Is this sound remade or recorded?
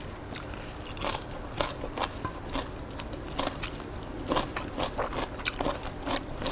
recorded